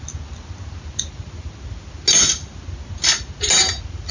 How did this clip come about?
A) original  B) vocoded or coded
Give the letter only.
A